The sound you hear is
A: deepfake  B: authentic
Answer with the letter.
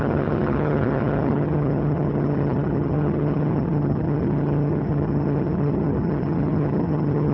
A